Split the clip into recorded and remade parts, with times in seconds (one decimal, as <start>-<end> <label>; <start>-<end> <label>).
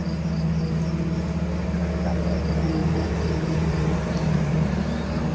0.0-2.8 recorded; 2.8-4.8 remade; 4.8-5.3 recorded